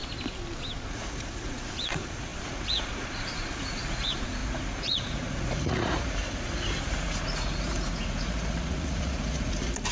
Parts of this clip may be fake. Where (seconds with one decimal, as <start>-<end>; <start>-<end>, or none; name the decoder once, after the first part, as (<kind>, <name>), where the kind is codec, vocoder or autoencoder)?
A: 0.9-9.9 (vocoder, Vocos)